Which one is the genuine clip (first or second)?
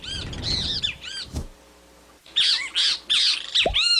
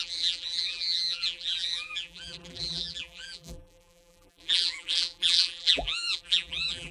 first